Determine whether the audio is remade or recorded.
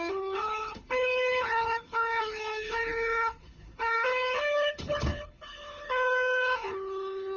remade